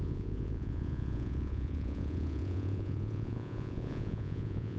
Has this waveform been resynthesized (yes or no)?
yes